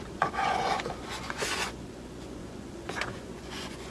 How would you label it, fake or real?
fake